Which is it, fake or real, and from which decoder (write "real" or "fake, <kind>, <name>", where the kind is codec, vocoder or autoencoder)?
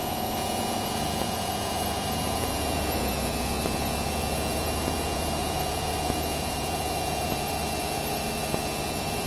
fake, vocoder, Vocos